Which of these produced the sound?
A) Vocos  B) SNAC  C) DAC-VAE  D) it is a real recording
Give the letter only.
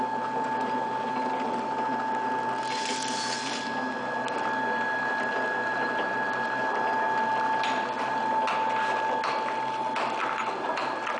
D